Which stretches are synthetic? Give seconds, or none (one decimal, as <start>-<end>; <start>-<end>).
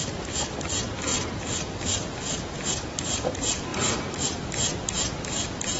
3.7-5.8